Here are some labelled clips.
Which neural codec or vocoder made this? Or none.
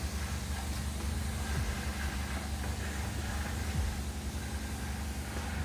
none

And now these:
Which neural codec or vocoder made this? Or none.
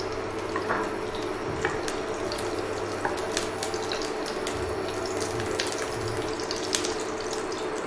none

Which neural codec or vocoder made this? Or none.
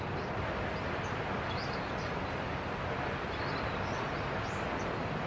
none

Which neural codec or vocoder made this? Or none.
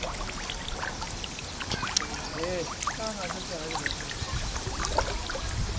none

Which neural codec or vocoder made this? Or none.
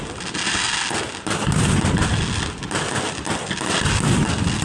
none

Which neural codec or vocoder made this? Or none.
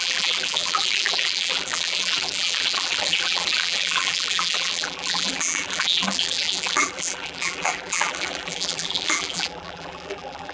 vocoder, BigVGAN v2